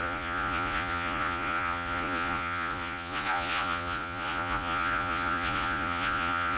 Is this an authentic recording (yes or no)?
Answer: no